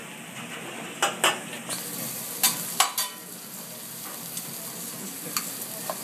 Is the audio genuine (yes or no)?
yes